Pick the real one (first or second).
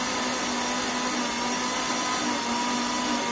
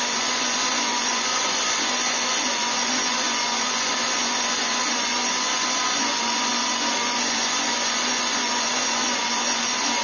first